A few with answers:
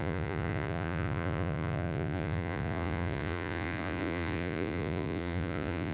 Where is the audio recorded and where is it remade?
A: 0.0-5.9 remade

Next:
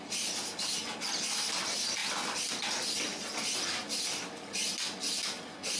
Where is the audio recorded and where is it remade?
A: 0.0-5.8 recorded